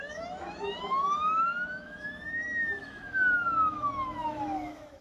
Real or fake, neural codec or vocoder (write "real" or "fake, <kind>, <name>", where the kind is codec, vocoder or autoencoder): fake, autoencoder, DAC-VAE